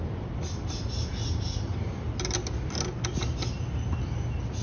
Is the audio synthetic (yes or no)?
no